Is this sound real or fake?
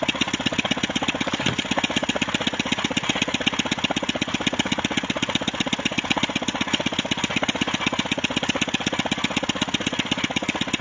real